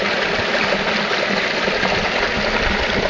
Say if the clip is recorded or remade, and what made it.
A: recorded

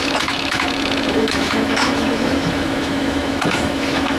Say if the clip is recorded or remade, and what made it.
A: remade, autoencoder, DAC-VAE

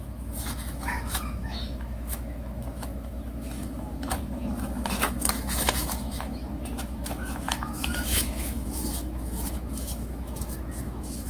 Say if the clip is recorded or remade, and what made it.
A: remade, autoencoder, DAC-VAE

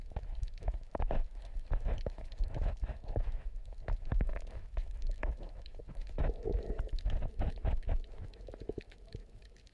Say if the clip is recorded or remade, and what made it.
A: remade, autoencoder, DAC-VAE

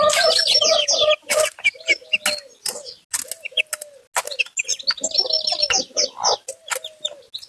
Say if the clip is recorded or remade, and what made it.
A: recorded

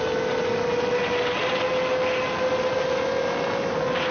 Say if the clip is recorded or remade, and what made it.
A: recorded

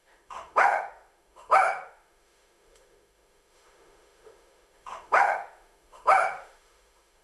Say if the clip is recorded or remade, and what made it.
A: remade, autoencoder, DAC-VAE